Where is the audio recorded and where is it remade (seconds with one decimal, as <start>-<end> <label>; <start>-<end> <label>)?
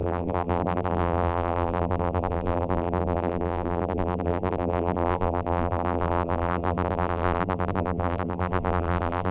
0.0-9.3 remade